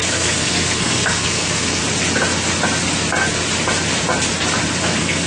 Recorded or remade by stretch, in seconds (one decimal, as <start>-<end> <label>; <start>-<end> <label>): 0.0-1.8 remade; 1.8-4.8 recorded; 4.8-5.3 remade